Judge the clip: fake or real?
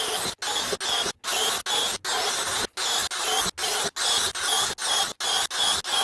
real